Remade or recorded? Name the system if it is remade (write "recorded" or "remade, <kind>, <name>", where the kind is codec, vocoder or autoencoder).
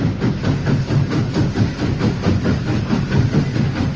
recorded